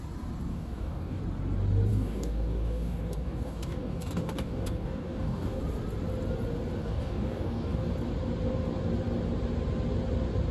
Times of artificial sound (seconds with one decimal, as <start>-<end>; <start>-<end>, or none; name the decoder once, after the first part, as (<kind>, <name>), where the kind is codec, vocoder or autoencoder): 0.5-1.2 (codec, DAC); 1.9-5.6; 6.8-7.9